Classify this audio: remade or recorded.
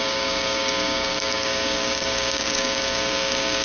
remade